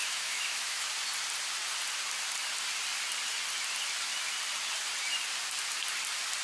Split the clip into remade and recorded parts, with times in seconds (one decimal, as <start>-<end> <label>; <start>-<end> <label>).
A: 0.0-0.9 remade; 0.9-6.4 recorded